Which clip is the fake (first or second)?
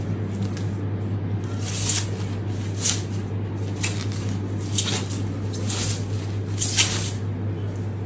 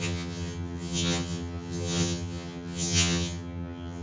second